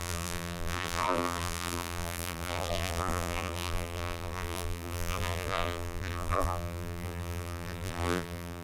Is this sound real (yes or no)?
no